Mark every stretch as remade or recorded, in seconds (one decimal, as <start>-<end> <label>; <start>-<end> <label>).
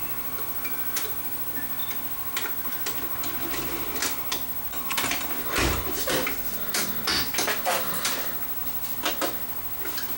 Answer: 0.0-10.2 recorded